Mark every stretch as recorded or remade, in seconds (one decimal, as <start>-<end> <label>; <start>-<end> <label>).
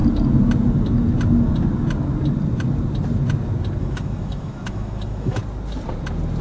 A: 0.0-3.8 recorded; 3.8-5.4 remade; 5.4-6.4 recorded